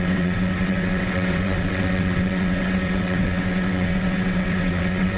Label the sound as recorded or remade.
remade